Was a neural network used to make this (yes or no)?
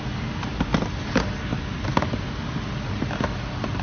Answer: no